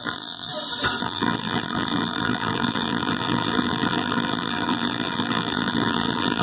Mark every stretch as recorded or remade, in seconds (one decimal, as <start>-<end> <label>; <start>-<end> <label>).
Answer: 0.0-0.5 remade; 0.5-1.0 recorded; 1.0-6.4 remade